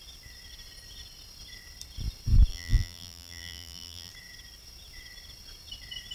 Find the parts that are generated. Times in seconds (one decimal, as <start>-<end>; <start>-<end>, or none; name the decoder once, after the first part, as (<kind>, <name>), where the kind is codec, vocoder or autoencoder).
2.5-4.1 (vocoder, BigVGAN v2)